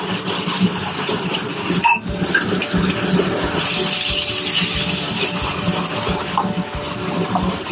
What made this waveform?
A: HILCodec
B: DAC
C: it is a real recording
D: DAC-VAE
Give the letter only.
C